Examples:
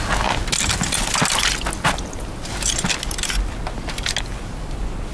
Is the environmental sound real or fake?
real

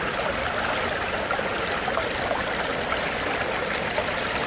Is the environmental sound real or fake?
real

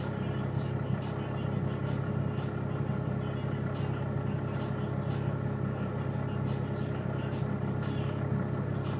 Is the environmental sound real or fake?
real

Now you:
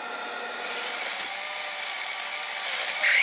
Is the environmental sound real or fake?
real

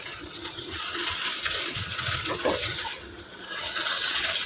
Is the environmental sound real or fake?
fake